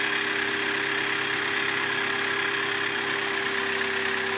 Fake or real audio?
real